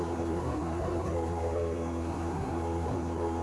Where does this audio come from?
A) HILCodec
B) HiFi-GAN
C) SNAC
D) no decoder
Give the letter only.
C